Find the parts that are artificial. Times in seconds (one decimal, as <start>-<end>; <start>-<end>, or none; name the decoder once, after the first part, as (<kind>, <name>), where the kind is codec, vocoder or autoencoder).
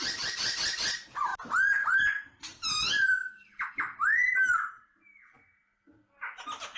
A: none